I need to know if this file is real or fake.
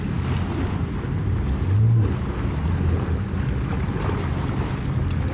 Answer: real